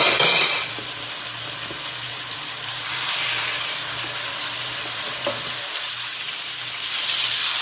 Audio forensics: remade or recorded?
remade